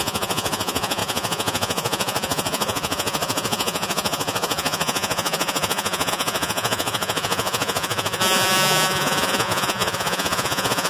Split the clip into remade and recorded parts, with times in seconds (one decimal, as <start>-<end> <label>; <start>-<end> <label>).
0.0-10.9 remade